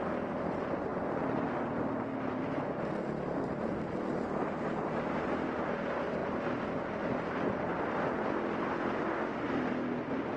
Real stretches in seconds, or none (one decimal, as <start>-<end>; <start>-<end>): 0.0-10.4